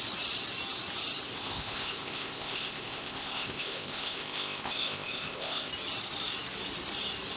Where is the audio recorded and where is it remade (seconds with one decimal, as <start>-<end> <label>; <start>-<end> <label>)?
0.0-1.3 recorded; 1.3-5.7 remade; 5.7-7.4 recorded